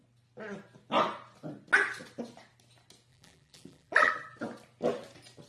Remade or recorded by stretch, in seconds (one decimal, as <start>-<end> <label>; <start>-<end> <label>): 0.0-3.1 recorded; 3.1-4.1 remade; 4.1-5.5 recorded